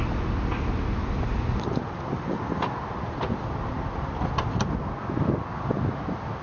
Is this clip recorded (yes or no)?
yes